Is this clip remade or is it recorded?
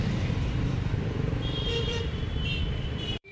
remade